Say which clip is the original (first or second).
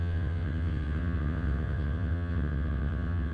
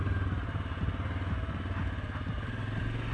second